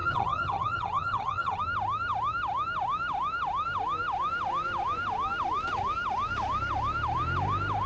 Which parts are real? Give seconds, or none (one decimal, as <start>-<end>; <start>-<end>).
1.6-7.9